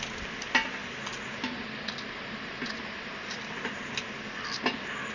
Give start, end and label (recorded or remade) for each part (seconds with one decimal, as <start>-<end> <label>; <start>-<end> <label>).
0.0-5.1 recorded